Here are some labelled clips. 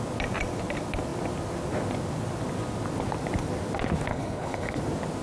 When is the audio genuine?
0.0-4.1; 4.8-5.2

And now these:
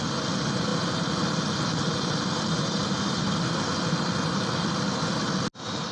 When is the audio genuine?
0.0-5.9

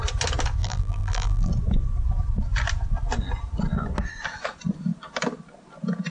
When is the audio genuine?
0.0-0.6; 1.5-6.1

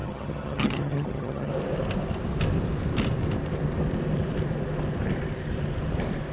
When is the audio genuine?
1.5-6.3

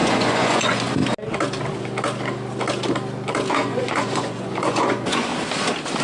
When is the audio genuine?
1.0-3.5; 5.3-6.0

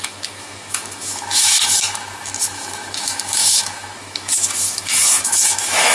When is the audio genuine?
none

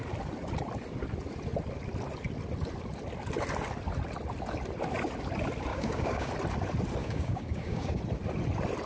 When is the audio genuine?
0.0-5.7; 6.3-7.0; 8.0-8.9